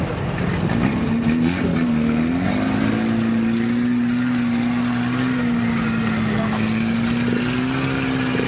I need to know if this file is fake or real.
real